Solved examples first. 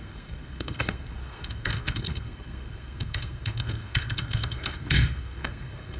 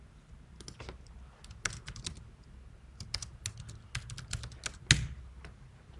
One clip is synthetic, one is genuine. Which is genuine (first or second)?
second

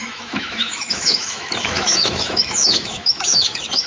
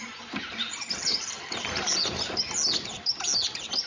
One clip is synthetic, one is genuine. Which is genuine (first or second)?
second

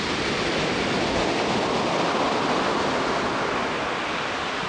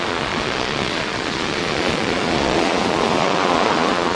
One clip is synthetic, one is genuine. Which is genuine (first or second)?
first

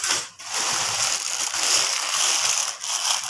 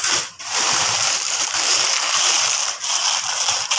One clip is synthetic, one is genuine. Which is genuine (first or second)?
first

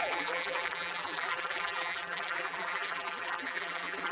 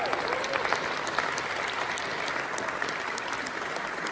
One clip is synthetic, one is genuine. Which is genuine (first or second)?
second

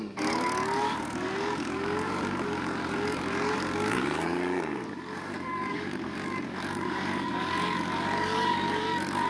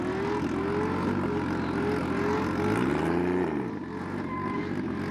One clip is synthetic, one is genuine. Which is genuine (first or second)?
second